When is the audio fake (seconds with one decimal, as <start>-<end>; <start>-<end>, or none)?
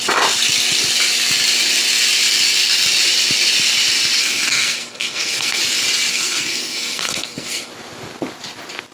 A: 4.2-5.6; 6.1-7.7